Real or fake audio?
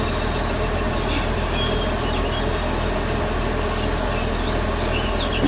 real